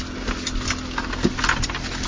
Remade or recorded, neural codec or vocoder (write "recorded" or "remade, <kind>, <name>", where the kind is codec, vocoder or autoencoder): recorded